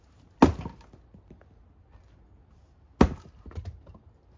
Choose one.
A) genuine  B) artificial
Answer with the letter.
A